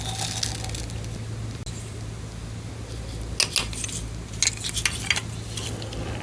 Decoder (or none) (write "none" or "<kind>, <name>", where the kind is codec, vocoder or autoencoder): none